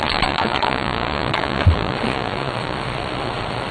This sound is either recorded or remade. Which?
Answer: remade